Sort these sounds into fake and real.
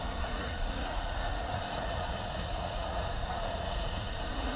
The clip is fake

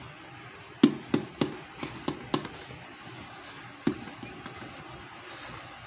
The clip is real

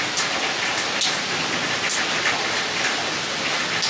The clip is real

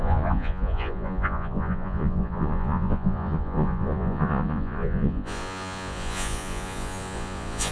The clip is fake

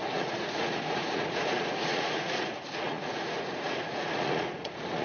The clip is fake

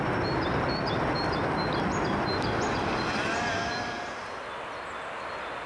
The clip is real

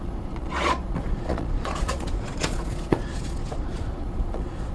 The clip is fake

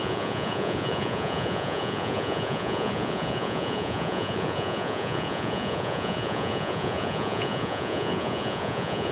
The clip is fake